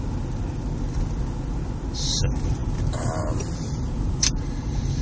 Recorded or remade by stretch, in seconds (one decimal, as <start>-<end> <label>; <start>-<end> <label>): 0.0-2.6 recorded; 2.6-5.0 remade